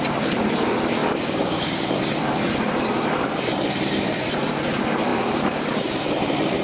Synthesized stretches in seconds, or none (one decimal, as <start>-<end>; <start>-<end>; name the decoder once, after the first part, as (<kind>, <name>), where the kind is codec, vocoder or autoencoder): 1.0-1.9 (codec, DAC)